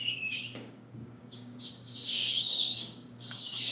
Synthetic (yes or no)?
yes